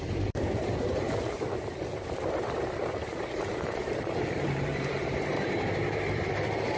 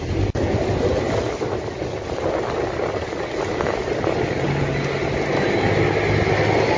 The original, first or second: second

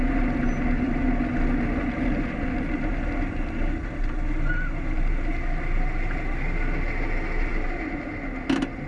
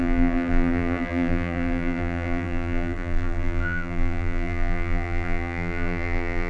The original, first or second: first